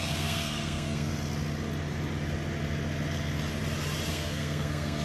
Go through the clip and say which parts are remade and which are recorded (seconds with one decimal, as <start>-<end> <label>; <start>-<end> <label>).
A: 0.0-1.1 remade; 1.1-4.1 recorded; 4.1-5.0 remade